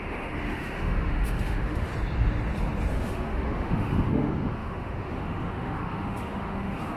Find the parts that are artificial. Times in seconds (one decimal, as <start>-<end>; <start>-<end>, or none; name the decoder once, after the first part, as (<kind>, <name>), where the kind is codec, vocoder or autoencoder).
0.0-1.9 (autoencoder, DAC-VAE); 2.9-7.0